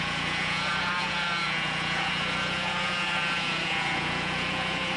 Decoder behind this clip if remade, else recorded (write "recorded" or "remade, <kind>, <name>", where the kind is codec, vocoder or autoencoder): remade, vocoder, Vocos